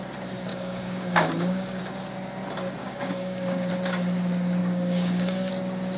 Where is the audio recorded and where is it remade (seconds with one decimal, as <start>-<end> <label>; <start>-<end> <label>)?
0.0-0.5 recorded; 0.5-1.8 remade; 1.8-2.8 recorded; 2.8-3.7 remade; 3.7-4.6 recorded; 4.6-5.5 remade; 5.5-6.0 recorded

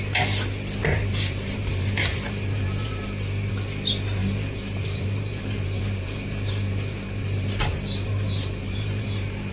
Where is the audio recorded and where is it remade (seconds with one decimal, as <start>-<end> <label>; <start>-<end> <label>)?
0.0-0.8 recorded; 0.8-3.5 remade; 3.5-4.2 recorded; 4.2-9.5 remade